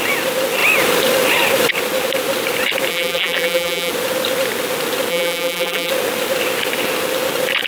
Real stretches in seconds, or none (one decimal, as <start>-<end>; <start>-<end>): 0.0-2.9; 3.9-5.1; 5.9-7.7